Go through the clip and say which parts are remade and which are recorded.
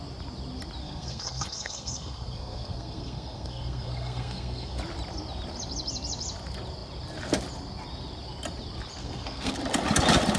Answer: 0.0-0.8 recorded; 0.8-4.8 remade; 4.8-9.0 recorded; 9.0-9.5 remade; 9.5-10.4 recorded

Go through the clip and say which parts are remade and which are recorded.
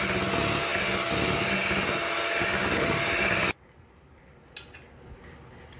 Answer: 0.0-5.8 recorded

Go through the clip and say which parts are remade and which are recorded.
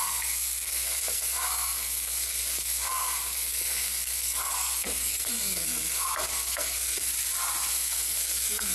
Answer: 0.0-7.1 remade; 7.1-7.7 recorded; 7.7-8.7 remade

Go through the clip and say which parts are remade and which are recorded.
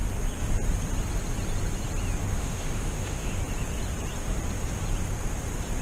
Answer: 0.0-2.2 recorded; 2.2-3.4 remade; 3.4-5.8 recorded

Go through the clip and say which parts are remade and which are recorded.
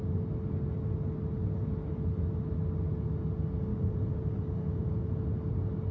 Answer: 0.0-3.7 recorded; 3.7-5.2 remade; 5.2-5.9 recorded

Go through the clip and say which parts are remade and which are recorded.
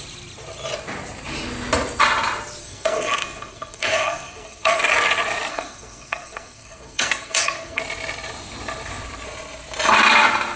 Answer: 0.0-2.6 recorded; 2.6-4.8 remade; 4.8-5.5 recorded; 5.5-7.8 remade; 7.8-10.6 recorded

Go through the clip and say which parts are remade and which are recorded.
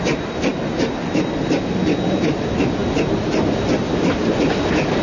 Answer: 0.0-5.0 recorded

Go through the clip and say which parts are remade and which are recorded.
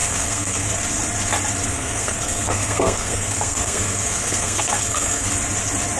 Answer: 0.0-0.7 remade; 0.7-1.7 recorded; 1.7-5.3 remade; 5.3-6.0 recorded